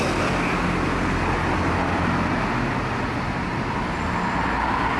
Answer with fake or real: real